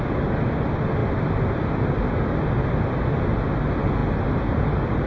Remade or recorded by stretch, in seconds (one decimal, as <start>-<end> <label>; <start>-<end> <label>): 0.0-5.1 recorded

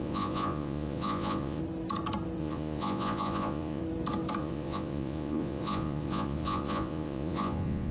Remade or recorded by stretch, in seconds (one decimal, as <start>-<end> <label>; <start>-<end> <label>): 0.0-1.6 remade; 1.6-2.4 recorded; 2.4-3.8 remade; 3.8-4.4 recorded; 4.4-7.9 remade

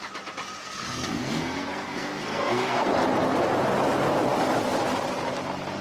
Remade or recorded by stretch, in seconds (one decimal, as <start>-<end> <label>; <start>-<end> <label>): 0.0-0.6 recorded; 0.6-2.9 remade; 2.9-5.8 recorded